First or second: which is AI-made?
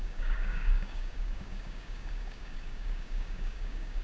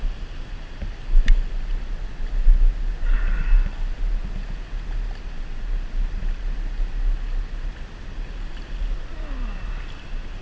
first